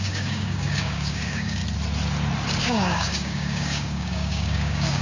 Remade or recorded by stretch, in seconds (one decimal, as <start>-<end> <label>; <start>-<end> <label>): 0.0-1.6 remade; 1.6-2.6 recorded; 2.6-5.0 remade